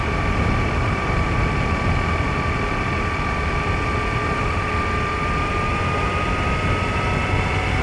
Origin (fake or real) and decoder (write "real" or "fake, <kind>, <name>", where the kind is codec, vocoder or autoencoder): real